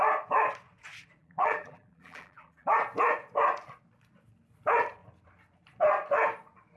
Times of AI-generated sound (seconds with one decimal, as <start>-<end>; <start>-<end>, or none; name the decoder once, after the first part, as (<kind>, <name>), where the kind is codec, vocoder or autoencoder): 1.2-2.7 (vocoder, BigVGAN v2)